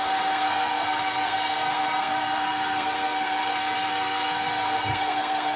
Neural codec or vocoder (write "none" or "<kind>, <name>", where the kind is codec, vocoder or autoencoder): codec, SNAC